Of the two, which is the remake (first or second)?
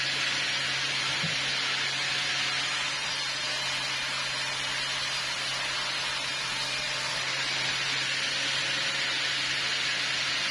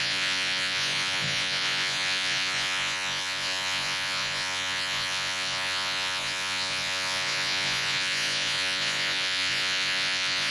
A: second